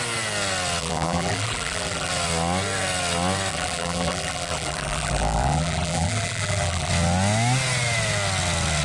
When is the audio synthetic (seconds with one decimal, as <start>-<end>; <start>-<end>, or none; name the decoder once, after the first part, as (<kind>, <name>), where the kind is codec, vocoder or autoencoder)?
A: 0.8-2.1 (vocoder, BigVGAN v2); 3.5-6.9

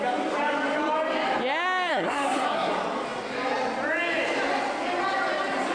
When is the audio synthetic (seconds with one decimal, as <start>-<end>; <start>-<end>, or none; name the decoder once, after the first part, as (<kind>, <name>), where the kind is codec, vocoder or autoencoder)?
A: 1.9-2.7 (codec, SNAC)

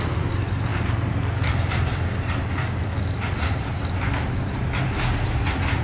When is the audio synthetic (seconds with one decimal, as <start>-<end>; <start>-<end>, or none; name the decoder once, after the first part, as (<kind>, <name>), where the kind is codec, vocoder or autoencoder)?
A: none